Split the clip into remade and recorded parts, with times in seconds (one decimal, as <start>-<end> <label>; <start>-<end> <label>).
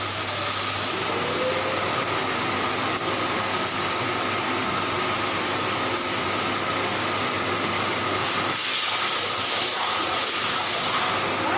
0.0-9.9 recorded; 9.9-10.7 remade; 10.7-11.6 recorded